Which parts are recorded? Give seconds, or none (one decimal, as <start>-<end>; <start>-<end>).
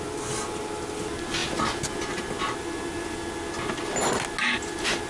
0.0-5.1